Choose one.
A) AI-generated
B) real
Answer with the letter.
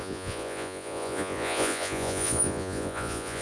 A